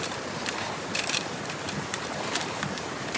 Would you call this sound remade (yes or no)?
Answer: yes